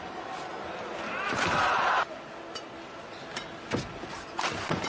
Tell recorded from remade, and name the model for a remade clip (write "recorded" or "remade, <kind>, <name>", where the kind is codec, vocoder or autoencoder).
recorded